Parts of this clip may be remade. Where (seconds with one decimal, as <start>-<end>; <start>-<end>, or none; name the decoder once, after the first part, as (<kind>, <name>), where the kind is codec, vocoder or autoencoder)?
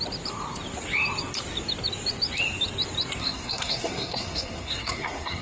3.2-5.4 (codec, SNAC)